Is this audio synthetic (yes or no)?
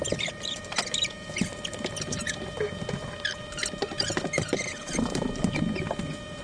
yes